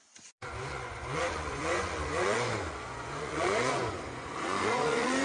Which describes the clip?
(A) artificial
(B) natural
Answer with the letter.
A